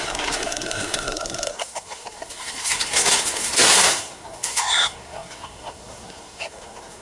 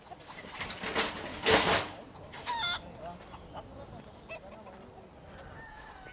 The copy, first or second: first